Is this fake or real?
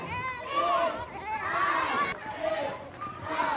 real